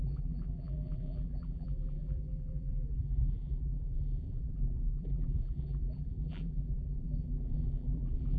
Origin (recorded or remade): remade